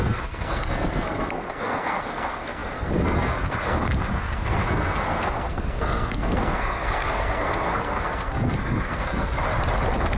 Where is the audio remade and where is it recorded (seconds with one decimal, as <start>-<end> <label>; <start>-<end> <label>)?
0.0-9.5 remade; 9.5-10.2 recorded